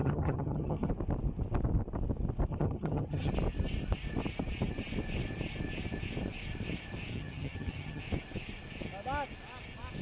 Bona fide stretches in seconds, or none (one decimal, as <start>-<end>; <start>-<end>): 0.9-2.5; 3.3-7.1; 8.0-10.0